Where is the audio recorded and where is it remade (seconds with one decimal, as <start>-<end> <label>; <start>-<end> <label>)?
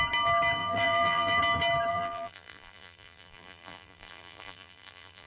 0.0-0.6 recorded; 0.6-1.4 remade; 1.4-1.9 recorded; 1.9-5.3 remade